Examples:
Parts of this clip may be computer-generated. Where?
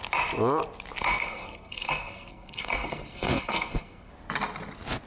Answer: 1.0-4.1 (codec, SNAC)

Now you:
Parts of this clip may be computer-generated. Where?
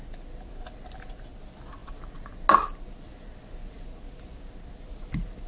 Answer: none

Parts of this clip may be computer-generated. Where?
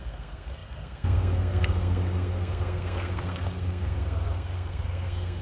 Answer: 0.0-5.4 (codec, SNAC)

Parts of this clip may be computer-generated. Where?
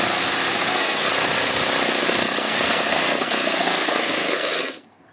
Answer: 0.5-1.1 (codec, SNAC); 2.0-5.1